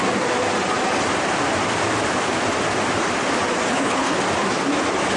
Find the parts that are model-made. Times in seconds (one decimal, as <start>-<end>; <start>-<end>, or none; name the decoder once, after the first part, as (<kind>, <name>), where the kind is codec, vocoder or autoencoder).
3.7-4.2 (codec, HILCodec)